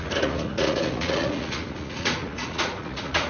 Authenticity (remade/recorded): remade